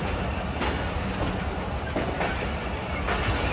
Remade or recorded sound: recorded